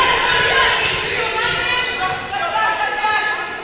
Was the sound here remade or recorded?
recorded